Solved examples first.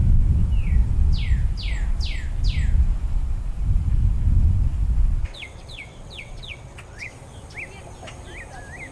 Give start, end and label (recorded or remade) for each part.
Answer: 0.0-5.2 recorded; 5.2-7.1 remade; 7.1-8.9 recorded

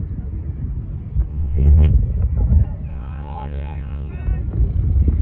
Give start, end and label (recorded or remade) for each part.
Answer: 0.0-1.3 recorded; 1.3-1.9 remade; 1.9-2.9 recorded; 2.9-4.1 remade; 4.1-5.2 recorded

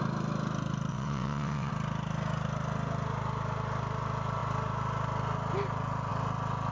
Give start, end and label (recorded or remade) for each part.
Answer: 0.0-0.9 recorded; 0.9-1.7 remade; 1.7-6.7 recorded

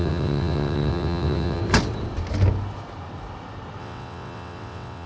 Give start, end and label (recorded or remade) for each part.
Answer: 0.0-1.6 remade; 1.6-3.8 recorded; 3.8-5.1 remade

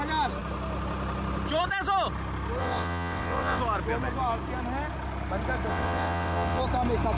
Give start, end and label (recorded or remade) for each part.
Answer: 0.0-2.6 recorded; 2.6-3.6 remade; 3.6-5.7 recorded; 5.7-6.6 remade; 6.6-7.2 recorded

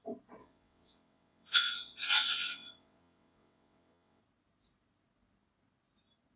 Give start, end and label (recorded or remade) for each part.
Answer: 0.0-0.4 recorded; 0.4-4.2 remade; 4.2-6.4 recorded

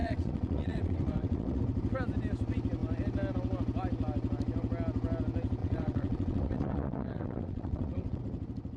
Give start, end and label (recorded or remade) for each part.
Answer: 0.0-1.6 remade; 1.6-5.6 recorded; 5.6-8.2 remade; 8.2-8.8 recorded